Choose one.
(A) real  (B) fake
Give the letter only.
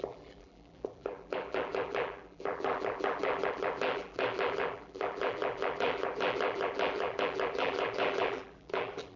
B